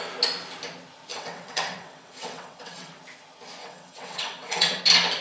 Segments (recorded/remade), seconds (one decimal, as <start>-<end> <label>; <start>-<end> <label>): 0.0-1.1 recorded; 1.1-3.0 remade; 3.0-3.6 recorded; 3.6-4.8 remade; 4.8-5.2 recorded